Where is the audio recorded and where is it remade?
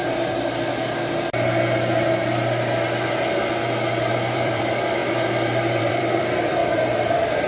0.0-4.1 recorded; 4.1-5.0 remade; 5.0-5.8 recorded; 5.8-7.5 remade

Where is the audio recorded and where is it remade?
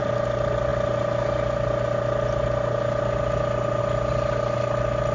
0.0-5.1 recorded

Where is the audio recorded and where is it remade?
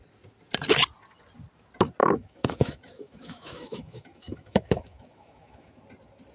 0.0-2.0 recorded; 2.0-5.8 remade; 5.8-6.3 recorded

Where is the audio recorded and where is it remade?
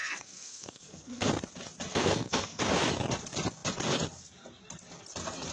0.0-1.3 remade; 1.3-1.9 recorded; 1.9-2.6 remade; 2.6-5.5 recorded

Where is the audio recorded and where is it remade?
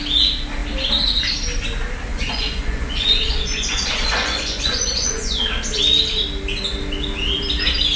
0.0-2.1 recorded; 2.1-5.4 remade; 5.4-8.0 recorded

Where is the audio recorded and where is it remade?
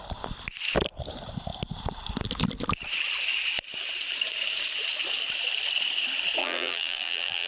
0.0-6.4 recorded; 6.4-7.5 remade